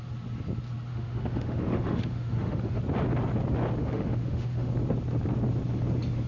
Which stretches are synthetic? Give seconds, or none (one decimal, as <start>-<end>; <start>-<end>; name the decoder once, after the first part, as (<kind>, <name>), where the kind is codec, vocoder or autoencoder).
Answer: 0.9-2.8 (autoencoder, DAC-VAE); 3.8-4.7